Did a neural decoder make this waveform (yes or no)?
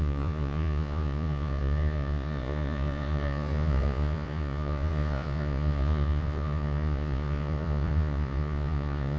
yes